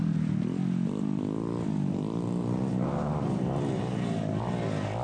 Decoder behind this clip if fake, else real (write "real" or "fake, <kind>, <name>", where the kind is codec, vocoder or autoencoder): real